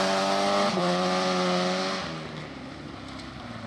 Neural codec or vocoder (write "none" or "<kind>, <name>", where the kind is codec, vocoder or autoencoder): none